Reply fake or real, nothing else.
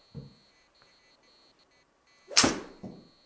real